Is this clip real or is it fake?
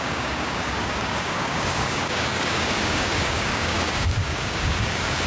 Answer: fake